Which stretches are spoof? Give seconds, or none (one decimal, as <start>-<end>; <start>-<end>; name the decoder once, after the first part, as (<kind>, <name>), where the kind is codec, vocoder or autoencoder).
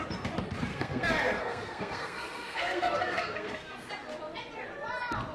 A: 0.7-3.9 (codec, SNAC)